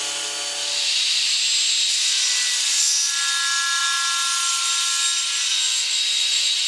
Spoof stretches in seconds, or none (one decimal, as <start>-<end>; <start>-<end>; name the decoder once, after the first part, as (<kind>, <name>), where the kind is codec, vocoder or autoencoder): 5.7-6.7 (vocoder, Vocos)